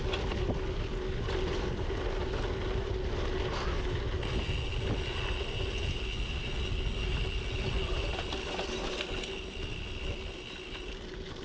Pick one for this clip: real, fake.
real